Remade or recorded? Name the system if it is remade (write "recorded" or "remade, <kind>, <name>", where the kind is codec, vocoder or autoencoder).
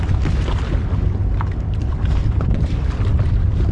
recorded